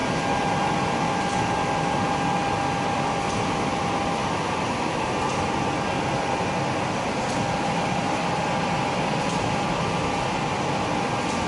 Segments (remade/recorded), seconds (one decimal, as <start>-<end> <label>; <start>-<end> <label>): 0.0-11.5 recorded